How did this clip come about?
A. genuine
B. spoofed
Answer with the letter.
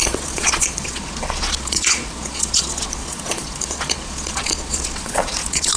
B